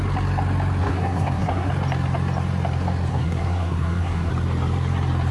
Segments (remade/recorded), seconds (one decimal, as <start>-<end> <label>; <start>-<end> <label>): 0.0-0.8 recorded; 0.8-1.7 remade; 1.7-3.1 recorded; 3.1-4.3 remade; 4.3-5.3 recorded